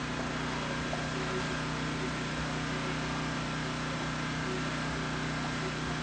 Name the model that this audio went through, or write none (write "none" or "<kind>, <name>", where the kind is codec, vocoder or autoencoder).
none